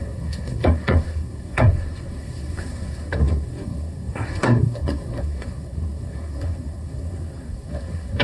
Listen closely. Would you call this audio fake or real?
fake